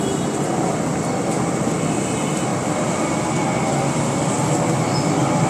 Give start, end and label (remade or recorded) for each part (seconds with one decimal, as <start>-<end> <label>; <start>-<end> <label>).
0.0-5.5 recorded